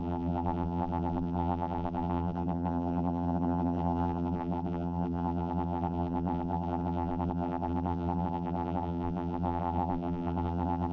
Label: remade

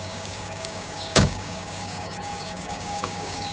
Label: remade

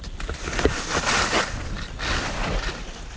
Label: recorded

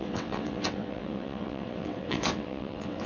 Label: remade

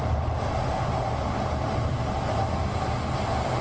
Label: recorded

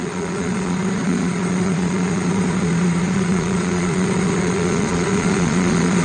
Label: remade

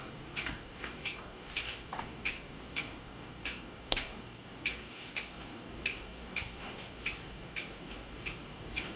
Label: remade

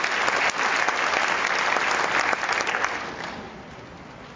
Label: recorded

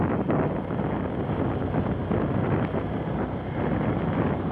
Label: recorded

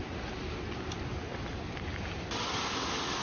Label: recorded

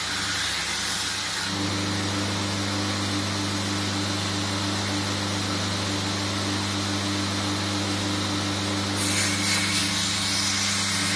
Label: recorded